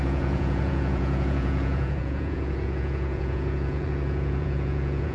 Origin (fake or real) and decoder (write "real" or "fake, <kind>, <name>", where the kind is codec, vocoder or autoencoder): fake, vocoder, Vocos